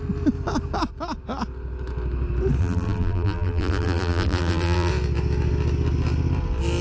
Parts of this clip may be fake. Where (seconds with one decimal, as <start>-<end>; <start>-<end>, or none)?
2.6-4.9